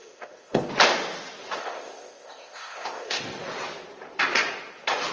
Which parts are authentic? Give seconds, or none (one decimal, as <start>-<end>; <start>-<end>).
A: 0.7-1.6; 3.2-5.1